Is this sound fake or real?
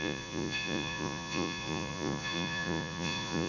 fake